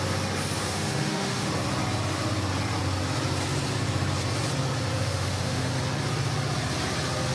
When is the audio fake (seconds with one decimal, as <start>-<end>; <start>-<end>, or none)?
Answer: 0.6-1.5; 4.9-5.7